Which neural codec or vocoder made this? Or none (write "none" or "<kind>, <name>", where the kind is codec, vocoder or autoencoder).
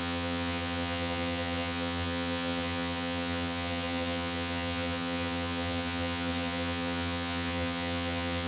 vocoder, HiFi-GAN